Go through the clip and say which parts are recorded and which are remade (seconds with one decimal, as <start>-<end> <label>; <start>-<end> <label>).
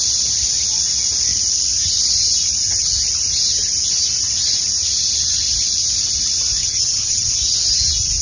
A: 0.0-6.6 recorded; 6.6-7.3 remade; 7.3-8.2 recorded